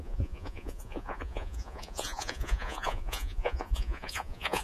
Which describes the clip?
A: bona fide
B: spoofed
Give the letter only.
B